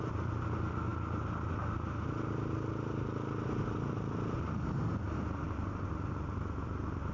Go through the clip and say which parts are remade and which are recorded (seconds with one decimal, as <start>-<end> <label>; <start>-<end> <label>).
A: 0.0-7.1 recorded